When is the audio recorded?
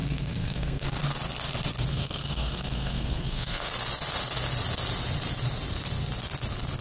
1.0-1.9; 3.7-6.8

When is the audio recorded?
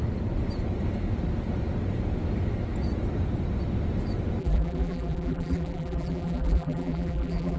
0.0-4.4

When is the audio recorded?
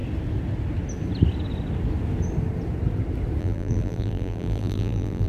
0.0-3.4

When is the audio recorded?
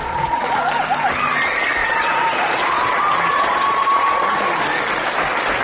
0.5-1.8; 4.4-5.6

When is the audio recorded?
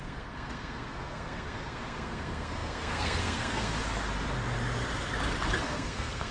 3.7-5.6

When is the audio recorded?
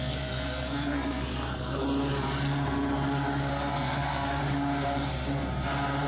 1.8-3.5; 4.4-6.1